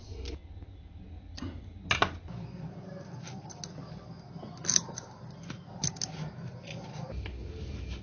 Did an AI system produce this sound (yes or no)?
no